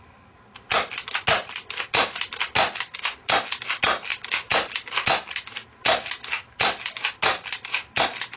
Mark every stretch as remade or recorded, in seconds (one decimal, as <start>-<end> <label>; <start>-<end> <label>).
0.0-8.4 recorded